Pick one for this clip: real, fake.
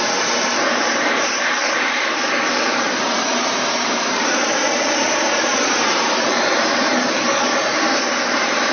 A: fake